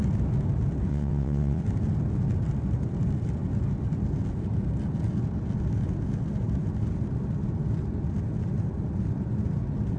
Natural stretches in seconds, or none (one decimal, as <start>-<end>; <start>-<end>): 0.0-0.9; 1.6-10.0